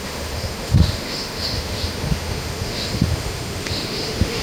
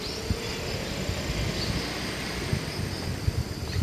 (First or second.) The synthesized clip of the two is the first